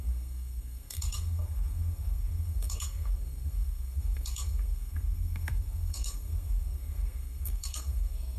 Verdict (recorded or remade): remade